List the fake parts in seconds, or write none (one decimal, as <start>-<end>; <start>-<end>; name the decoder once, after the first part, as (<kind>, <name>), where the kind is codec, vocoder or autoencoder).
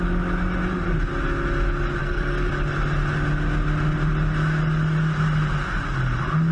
2.0-2.5 (codec, SNAC)